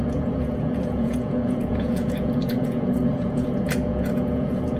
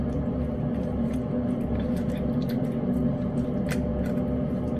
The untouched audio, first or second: second